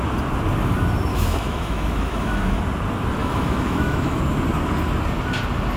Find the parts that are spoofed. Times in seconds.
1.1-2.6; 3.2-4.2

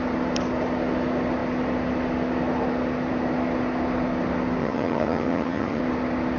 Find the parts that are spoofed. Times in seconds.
4.6-5.8

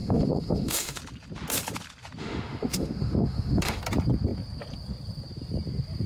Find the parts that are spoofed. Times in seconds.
0.0-1.0; 2.2-3.8

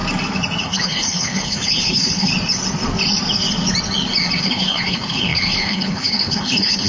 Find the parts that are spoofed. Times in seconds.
0.6-2.3; 4.4-6.9